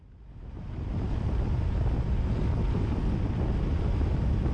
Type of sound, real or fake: real